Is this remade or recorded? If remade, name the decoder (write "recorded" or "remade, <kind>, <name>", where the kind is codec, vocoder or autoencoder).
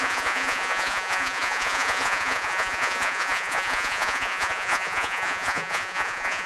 remade, vocoder, Vocos